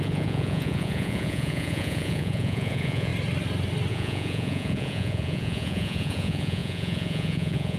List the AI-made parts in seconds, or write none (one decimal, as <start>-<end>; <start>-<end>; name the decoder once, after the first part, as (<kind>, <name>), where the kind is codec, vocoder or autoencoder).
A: 0.0-3.1 (vocoder, Vocos); 3.9-7.8